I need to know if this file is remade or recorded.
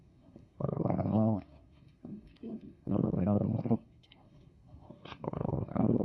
remade